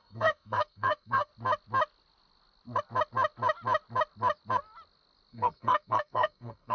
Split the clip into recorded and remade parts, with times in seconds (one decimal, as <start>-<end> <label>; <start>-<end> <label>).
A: 0.0-1.3 remade; 1.3-5.3 recorded; 5.3-6.7 remade